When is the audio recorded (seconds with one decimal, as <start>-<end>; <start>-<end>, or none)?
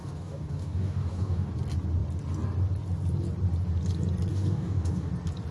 1.5-4.3; 5.1-5.5